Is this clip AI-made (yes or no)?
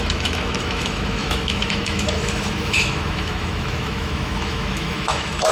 yes